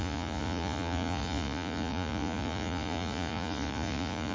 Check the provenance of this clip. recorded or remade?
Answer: remade